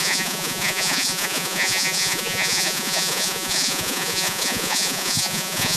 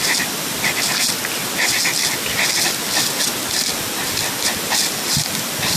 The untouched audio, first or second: second